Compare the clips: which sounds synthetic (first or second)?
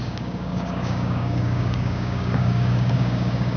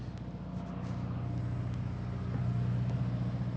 first